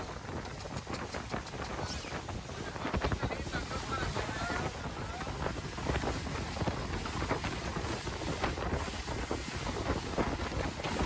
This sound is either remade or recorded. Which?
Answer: recorded